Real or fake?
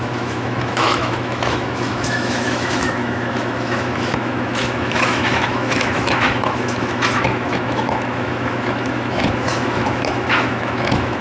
fake